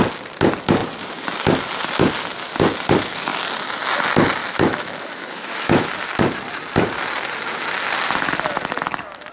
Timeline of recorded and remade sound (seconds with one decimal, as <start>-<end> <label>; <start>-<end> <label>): 0.0-4.4 recorded; 4.4-5.9 remade; 5.9-9.3 recorded